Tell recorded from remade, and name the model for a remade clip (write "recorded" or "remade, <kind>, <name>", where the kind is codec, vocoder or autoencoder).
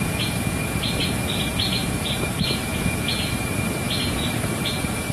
remade, vocoder, Vocos